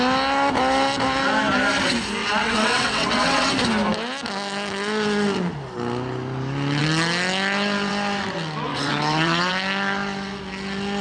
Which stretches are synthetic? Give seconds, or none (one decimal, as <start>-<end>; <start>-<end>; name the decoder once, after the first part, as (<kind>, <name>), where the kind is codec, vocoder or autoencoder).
2.2-3.5 (vocoder, WaveNeXt); 8.7-9.5